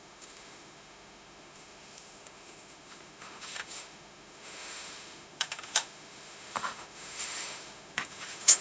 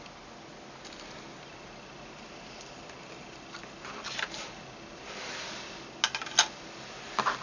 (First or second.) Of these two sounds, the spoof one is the first